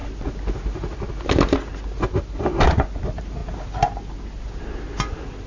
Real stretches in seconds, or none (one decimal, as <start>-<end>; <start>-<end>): 0.0-5.5

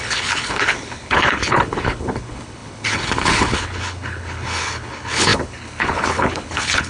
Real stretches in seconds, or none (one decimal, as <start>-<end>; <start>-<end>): none

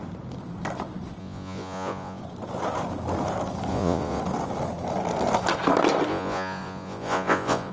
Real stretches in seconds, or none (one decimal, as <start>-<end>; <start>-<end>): 0.0-1.2; 2.2-3.7; 4.2-6.1